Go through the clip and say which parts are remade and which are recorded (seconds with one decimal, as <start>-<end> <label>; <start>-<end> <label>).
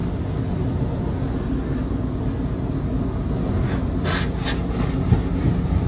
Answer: 0.0-5.9 recorded